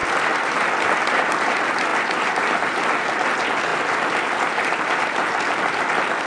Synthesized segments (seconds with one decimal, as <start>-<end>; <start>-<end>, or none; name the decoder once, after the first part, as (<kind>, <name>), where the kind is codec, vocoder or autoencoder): none